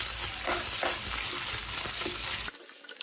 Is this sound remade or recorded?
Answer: recorded